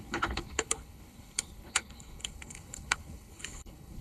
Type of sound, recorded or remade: remade